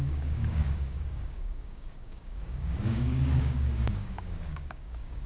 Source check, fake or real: fake